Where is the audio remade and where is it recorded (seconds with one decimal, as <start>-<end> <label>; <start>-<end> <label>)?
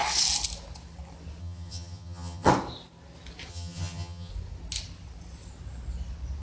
0.0-1.4 recorded; 1.4-2.5 remade; 2.5-3.5 recorded; 3.5-4.3 remade; 4.3-6.4 recorded